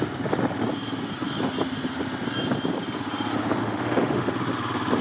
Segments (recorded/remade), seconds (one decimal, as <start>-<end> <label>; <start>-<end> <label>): 0.0-3.6 recorded; 3.6-4.3 remade; 4.3-5.0 recorded